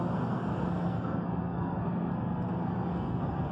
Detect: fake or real fake